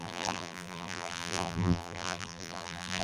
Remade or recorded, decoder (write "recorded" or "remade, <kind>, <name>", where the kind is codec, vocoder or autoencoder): remade, vocoder, BigVGAN v2